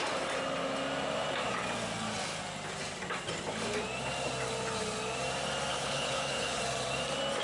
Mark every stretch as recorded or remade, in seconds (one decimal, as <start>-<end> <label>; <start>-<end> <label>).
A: 0.0-5.7 recorded; 5.7-6.6 remade; 6.6-7.4 recorded